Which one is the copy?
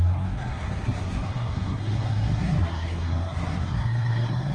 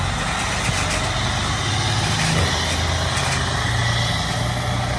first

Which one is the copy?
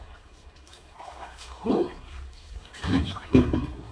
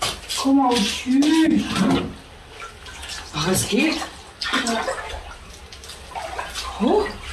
first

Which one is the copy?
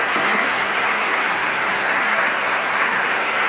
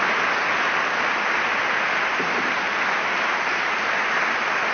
first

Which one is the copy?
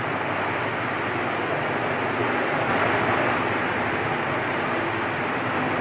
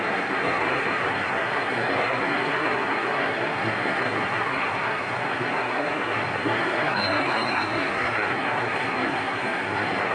second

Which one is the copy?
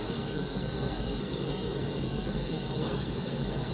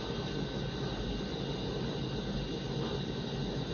first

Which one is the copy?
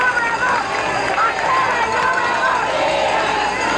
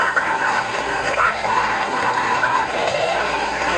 second